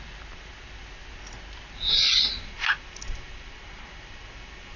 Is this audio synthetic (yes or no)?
no